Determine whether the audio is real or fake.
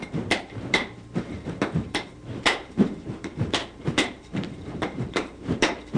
fake